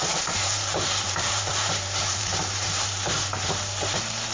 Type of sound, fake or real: fake